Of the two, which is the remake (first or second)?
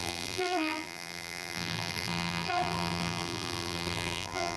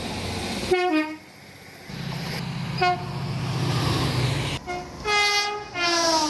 first